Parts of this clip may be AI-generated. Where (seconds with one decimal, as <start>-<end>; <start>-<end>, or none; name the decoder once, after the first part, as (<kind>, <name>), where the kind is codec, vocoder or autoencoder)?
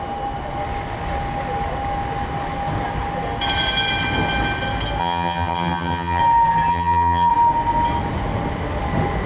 5.0-6.2 (vocoder, HiFi-GAN); 6.7-7.3